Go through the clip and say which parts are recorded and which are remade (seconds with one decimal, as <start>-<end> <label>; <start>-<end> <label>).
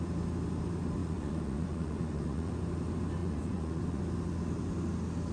0.0-1.0 recorded; 1.0-2.5 remade; 2.5-3.2 recorded; 3.2-4.0 remade; 4.0-5.3 recorded